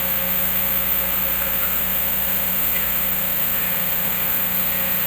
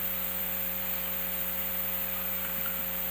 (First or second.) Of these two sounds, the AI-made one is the first